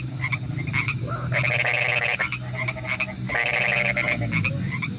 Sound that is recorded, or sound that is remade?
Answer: recorded